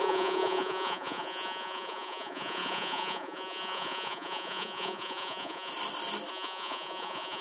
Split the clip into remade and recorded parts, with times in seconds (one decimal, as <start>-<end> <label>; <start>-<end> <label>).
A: 0.0-5.7 remade; 5.7-6.3 recorded; 6.3-7.4 remade